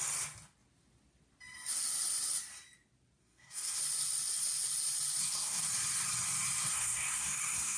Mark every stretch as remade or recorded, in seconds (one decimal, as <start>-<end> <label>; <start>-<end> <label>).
0.0-3.2 recorded; 3.2-3.8 remade; 3.8-5.2 recorded; 5.2-5.7 remade; 5.7-6.6 recorded; 6.6-7.8 remade